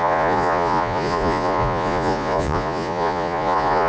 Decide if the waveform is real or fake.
fake